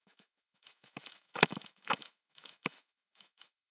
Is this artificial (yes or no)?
yes